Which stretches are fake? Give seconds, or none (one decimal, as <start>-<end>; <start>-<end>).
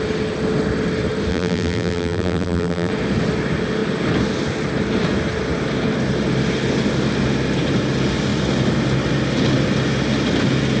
1.3-2.9